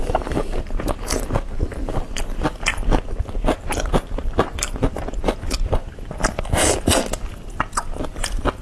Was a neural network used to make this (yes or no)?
no